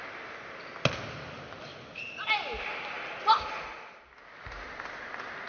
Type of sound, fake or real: real